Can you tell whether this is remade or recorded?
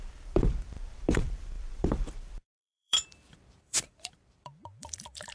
remade